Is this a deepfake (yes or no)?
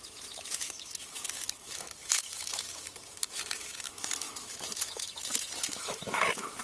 yes